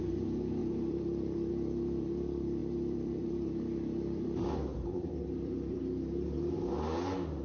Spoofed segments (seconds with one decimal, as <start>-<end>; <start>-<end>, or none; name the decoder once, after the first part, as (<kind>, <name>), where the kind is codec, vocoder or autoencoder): 0.6-1.5 (vocoder, BigVGAN v2); 2.6-5.8

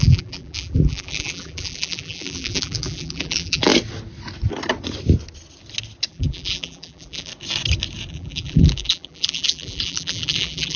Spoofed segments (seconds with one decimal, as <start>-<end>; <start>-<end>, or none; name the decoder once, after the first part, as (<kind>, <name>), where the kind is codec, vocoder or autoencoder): 0.0-3.7 (vocoder, BigVGAN v2); 6.1-7.3; 8.1-10.8

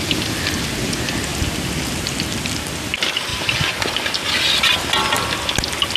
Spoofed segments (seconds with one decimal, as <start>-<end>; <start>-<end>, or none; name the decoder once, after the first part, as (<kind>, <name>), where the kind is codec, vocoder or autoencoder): none

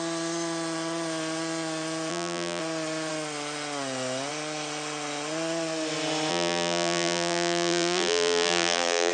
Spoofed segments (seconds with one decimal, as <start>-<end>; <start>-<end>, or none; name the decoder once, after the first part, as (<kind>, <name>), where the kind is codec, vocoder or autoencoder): 2.1-2.6 (vocoder, BigVGAN v2); 6.3-9.1

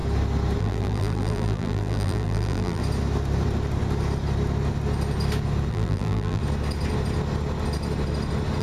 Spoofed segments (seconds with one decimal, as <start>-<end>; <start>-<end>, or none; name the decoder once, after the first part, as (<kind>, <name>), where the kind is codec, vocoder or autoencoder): 0.6-2.8 (vocoder, BigVGAN v2); 5.7-6.4

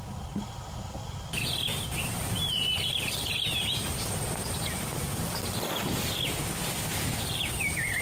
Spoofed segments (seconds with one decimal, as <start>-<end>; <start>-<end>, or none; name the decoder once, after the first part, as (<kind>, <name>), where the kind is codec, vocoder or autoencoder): 1.7-5.6 (vocoder, BigVGAN v2)

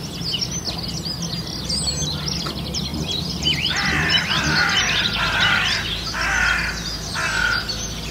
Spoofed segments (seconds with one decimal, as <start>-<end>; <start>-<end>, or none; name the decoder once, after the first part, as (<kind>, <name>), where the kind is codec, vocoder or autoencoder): 2.9-4.8 (vocoder, BigVGAN v2)

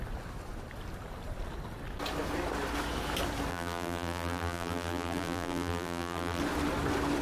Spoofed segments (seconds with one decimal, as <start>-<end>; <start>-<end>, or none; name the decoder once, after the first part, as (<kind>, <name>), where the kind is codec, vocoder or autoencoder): 3.5-6.4 (vocoder, BigVGAN v2)